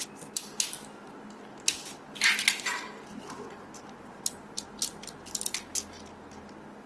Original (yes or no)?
yes